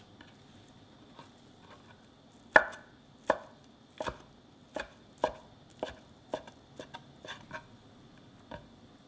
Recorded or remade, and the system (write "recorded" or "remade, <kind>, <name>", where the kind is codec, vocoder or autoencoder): recorded